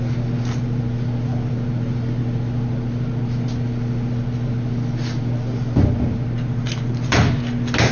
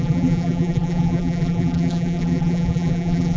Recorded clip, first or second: first